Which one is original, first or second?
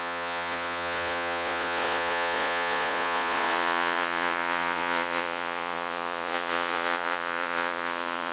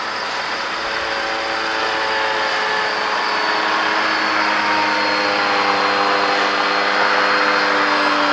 second